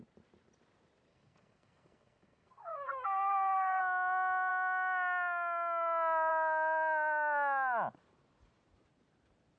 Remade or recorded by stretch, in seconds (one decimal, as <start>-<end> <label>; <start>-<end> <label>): 0.0-1.1 recorded; 1.1-3.8 remade; 3.8-9.6 recorded